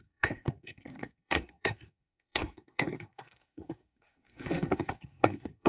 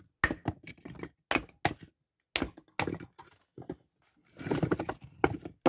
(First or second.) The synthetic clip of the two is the first